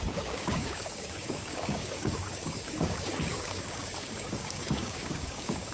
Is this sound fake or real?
fake